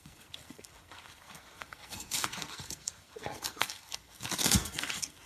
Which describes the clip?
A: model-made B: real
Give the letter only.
A